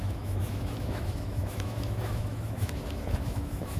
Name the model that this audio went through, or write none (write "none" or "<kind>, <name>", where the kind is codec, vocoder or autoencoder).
autoencoder, DAC-VAE